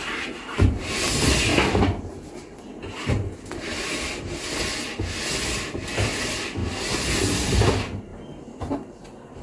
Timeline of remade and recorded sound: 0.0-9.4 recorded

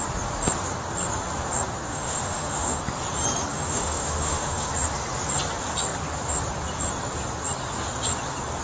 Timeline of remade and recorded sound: 0.0-1.9 recorded; 1.9-2.8 remade; 2.8-3.5 recorded; 3.5-4.7 remade; 4.7-8.6 recorded

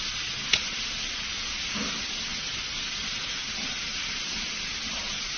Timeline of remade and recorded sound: 0.0-5.4 recorded

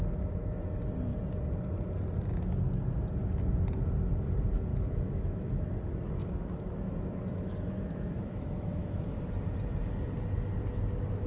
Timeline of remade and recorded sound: 0.0-4.7 recorded; 4.7-5.5 remade; 5.5-6.2 recorded; 6.2-9.3 remade; 9.3-11.3 recorded

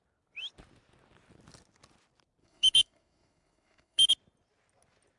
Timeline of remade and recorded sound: 0.0-2.4 recorded; 2.4-4.1 remade; 4.1-5.2 recorded

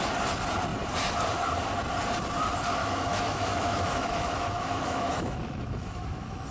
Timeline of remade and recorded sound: 0.0-2.8 recorded; 2.8-6.5 remade

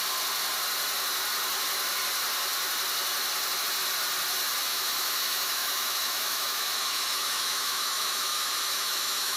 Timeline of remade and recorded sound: 0.0-4.7 recorded; 4.7-9.4 remade

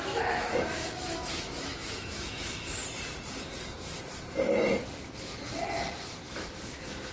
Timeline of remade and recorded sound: 0.0-2.8 remade; 2.8-6.5 recorded; 6.5-7.1 remade